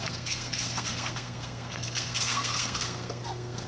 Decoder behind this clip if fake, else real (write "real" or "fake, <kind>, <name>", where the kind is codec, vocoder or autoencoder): fake, codec, SNAC